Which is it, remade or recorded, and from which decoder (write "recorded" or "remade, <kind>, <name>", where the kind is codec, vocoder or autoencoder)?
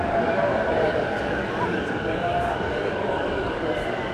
remade, codec, DAC